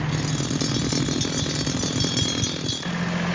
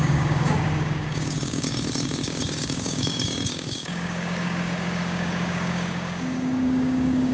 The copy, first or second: second